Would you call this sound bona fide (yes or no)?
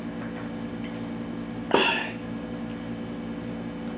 yes